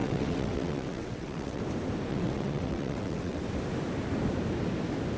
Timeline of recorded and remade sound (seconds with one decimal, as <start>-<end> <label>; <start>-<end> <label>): 0.0-1.6 remade; 1.6-2.1 recorded; 2.1-3.4 remade; 3.4-5.2 recorded